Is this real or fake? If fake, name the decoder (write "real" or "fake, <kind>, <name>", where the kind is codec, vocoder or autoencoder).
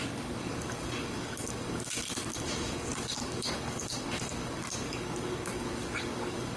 fake, codec, DAC